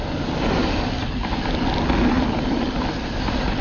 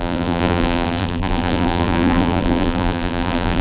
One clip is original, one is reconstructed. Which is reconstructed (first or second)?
second